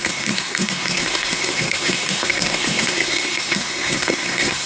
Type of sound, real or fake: fake